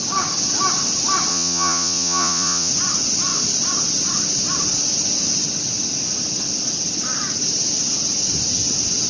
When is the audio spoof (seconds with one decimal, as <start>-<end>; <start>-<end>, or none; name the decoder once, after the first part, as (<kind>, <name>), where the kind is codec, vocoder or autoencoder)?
1.3-2.7 (vocoder, Vocos)